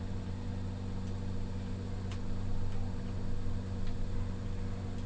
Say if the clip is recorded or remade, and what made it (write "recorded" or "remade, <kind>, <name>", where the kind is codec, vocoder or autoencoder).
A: recorded